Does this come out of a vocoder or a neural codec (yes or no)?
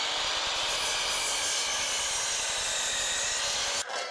no